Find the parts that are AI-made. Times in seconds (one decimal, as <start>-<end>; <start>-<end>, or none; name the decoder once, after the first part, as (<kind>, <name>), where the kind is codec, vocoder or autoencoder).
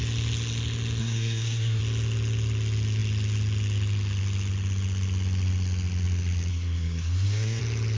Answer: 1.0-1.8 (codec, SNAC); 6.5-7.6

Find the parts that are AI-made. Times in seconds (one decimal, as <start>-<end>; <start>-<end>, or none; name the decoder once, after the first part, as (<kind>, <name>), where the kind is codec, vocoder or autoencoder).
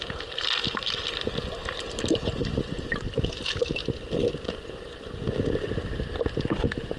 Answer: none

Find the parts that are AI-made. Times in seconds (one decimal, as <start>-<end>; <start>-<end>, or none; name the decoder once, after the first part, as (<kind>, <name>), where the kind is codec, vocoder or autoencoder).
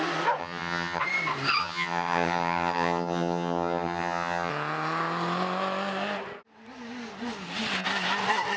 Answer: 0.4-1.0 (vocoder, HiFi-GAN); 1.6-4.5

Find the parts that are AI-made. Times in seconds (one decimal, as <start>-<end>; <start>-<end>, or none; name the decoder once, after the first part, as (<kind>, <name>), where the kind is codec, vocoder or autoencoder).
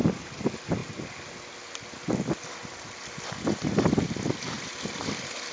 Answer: 0.0-0.8 (vocoder, BigVGAN v2); 3.3-5.5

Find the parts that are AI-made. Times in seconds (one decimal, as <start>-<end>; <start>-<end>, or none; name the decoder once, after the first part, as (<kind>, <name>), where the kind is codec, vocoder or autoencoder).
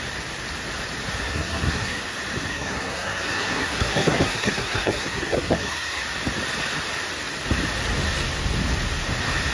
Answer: 1.2-2.0 (codec, SNAC); 2.5-6.0